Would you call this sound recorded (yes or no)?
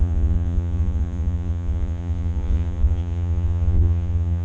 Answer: no